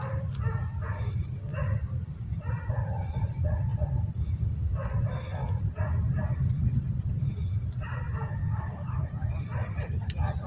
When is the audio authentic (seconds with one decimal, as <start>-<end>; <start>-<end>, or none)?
0.0-8.4; 9.3-10.5